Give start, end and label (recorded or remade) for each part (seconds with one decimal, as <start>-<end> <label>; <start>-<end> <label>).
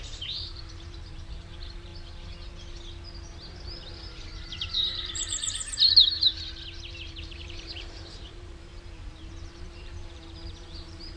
0.0-1.9 remade; 1.9-4.6 recorded; 4.6-6.0 remade; 6.0-7.2 recorded; 7.2-8.7 remade; 8.7-9.6 recorded; 9.6-11.2 remade